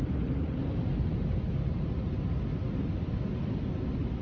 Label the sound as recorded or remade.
recorded